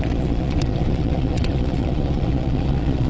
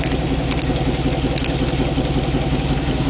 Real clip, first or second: second